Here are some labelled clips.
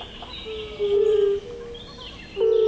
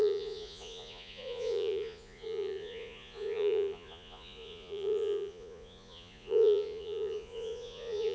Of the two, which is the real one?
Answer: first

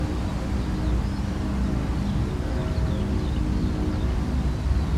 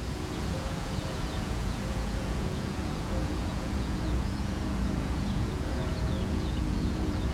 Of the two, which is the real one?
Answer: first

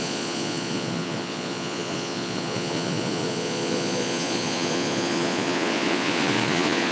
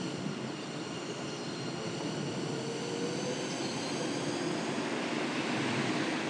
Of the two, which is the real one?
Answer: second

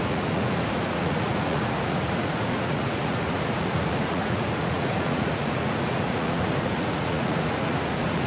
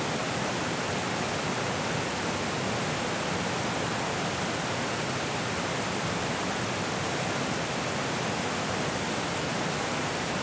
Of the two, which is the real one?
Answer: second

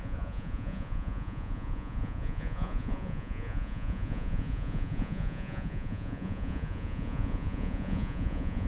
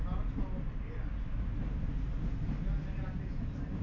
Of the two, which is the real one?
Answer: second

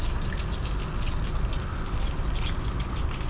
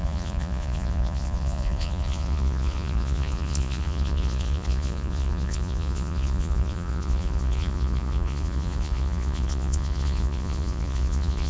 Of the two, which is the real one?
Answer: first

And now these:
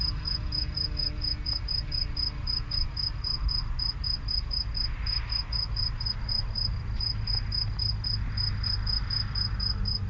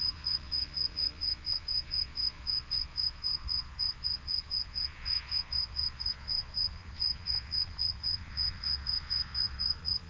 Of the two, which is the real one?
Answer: first